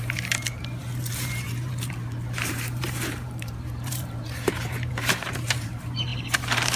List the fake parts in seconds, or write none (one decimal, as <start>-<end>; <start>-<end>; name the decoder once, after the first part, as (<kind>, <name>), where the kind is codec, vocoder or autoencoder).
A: 0.0-6.8 (vocoder, BigVGAN v2)